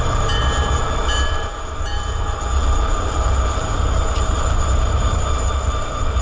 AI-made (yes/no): yes